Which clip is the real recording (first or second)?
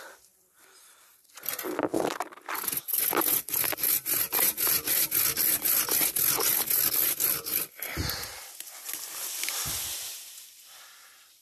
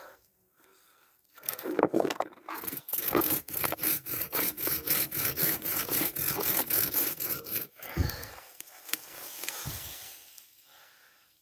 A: first